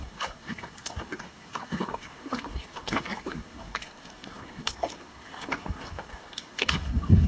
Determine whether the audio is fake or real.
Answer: fake